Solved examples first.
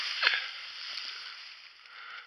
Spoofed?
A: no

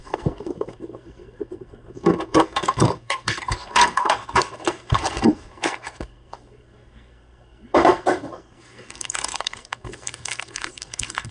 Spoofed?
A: yes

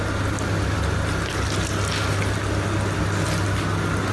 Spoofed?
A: no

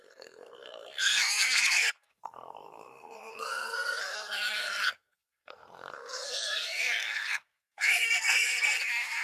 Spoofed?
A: yes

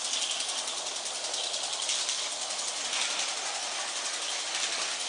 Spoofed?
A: no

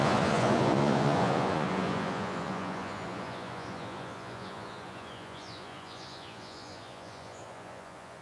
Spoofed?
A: yes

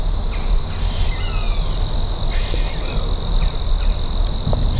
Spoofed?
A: no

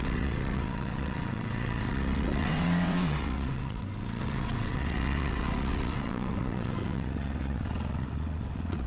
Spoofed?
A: yes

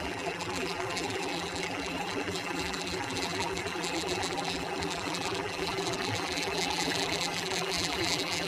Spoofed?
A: yes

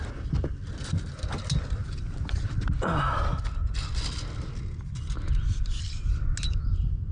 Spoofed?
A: no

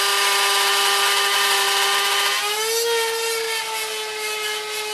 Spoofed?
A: no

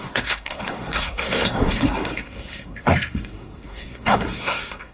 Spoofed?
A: yes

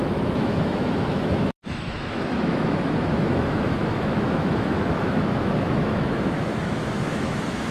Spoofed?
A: yes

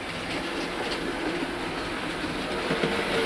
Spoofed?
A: no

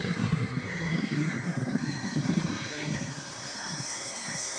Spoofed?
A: yes